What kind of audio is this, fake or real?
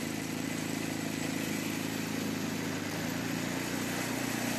real